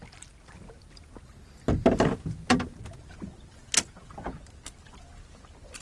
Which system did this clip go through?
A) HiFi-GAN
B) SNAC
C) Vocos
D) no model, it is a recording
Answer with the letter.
D